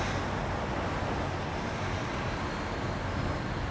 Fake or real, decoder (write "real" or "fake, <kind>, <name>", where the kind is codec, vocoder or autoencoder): real